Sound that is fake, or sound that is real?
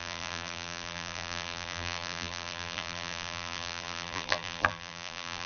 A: fake